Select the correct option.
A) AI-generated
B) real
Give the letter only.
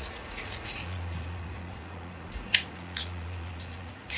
A